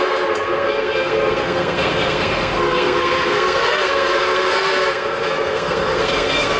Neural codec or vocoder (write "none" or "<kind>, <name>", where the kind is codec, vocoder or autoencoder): codec, SNAC